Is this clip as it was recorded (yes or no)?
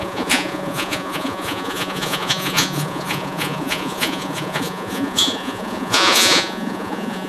no